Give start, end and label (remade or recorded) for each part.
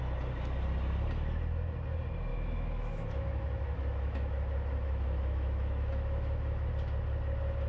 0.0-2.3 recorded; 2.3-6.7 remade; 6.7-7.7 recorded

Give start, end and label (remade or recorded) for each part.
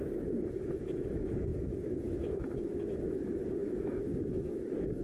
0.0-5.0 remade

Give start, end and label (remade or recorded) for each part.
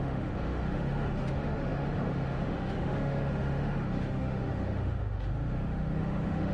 0.0-6.5 remade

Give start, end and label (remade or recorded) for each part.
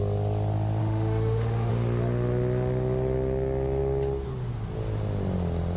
0.0-0.8 recorded; 0.8-1.7 remade; 1.7-5.8 recorded